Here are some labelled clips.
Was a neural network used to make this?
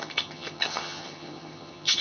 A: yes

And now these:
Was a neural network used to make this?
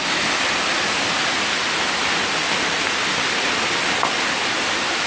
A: no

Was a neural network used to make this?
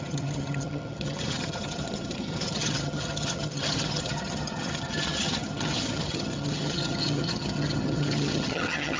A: yes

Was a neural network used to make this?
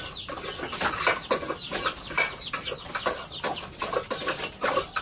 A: no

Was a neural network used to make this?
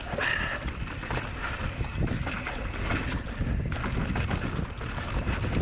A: no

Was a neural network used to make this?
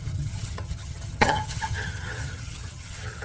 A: yes